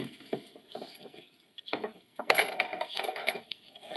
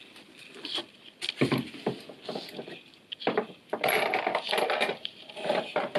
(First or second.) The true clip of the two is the second